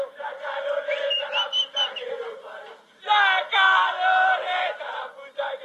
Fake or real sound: real